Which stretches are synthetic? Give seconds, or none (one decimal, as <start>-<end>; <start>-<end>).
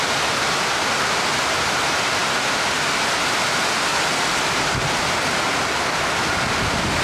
none